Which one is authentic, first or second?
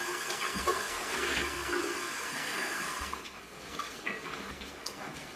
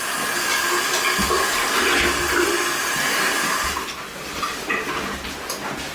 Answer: second